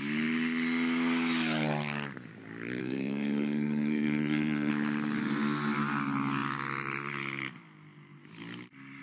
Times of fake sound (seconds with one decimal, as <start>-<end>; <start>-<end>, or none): 2.8-4.7